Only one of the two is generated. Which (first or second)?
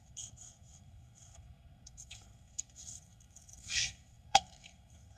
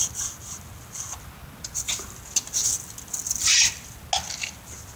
first